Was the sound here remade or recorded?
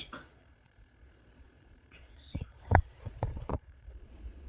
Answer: remade